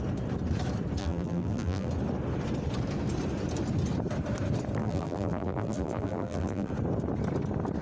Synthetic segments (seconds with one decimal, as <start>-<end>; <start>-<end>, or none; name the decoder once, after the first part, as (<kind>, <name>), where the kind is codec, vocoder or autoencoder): 1.0-1.9 (vocoder, BigVGAN v2); 4.8-6.7